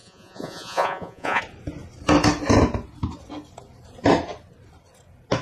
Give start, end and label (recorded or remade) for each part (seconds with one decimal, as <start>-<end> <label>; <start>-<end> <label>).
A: 0.0-1.4 remade; 1.4-5.4 recorded